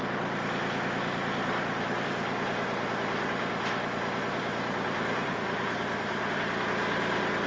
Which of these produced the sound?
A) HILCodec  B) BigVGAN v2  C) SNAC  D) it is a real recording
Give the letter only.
D